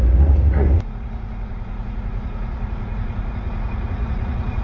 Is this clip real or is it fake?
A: fake